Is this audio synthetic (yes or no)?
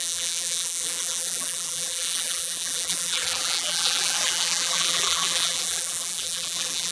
yes